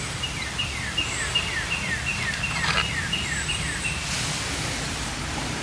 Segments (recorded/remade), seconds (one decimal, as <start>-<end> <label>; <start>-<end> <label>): 0.0-5.6 recorded

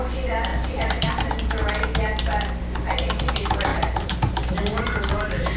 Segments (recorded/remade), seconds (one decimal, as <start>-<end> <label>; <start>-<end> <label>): 0.0-0.5 recorded; 0.5-1.1 remade; 1.1-3.7 recorded; 3.7-5.6 remade

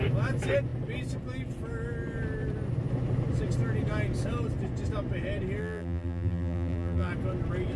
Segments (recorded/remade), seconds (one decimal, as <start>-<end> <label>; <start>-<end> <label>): 0.0-5.6 recorded; 5.6-7.1 remade; 7.1-7.8 recorded

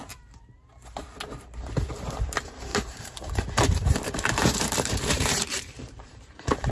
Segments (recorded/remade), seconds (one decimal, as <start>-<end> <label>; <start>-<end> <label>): 0.0-2.2 recorded; 2.2-6.7 remade